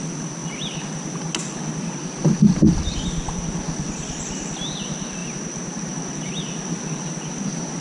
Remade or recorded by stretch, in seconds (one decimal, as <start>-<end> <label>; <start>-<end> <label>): 0.0-7.8 recorded